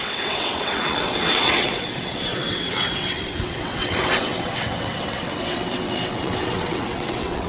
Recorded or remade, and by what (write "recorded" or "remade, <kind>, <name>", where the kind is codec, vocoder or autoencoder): remade, vocoder, WaveNeXt